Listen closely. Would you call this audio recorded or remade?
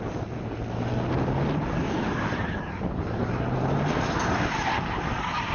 recorded